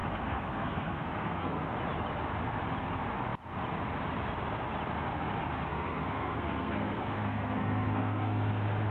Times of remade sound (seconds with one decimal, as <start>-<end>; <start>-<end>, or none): 0.0-1.6; 5.7-8.5

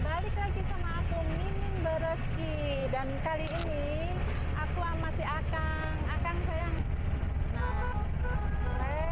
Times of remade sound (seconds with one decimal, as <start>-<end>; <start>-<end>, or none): none

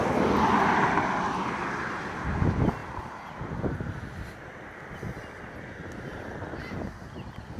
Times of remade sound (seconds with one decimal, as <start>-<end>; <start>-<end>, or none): none

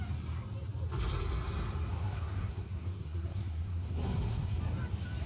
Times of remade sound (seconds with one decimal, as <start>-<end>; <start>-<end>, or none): 1.9-4.6

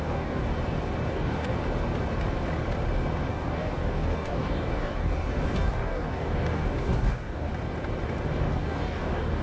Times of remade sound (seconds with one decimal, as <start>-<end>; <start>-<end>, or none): 0.0-0.4; 1.1-1.5; 3.3-7.5; 8.4-9.4